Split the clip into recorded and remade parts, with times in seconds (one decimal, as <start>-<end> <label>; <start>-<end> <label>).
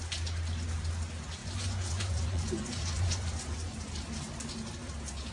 0.0-1.4 recorded; 1.4-3.9 remade; 3.9-5.3 recorded